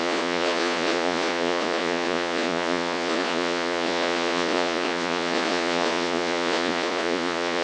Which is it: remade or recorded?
remade